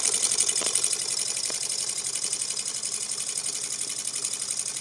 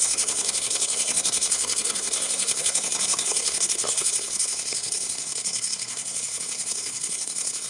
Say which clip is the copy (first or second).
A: second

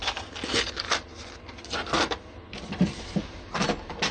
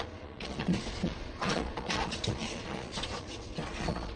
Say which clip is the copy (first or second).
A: second